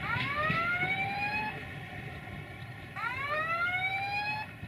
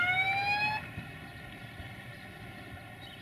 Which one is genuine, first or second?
second